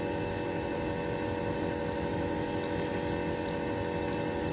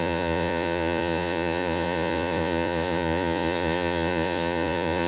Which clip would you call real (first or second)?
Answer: first